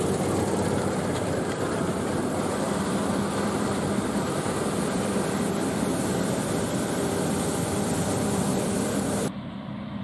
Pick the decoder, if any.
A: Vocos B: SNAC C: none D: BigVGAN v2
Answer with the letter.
D